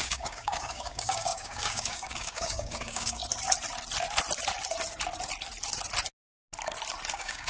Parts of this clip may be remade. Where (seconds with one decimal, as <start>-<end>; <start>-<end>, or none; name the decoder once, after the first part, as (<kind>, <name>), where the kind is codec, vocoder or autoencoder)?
0.0-3.2 (codec, DAC); 7.1-7.5